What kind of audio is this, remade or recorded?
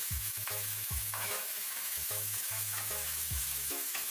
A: remade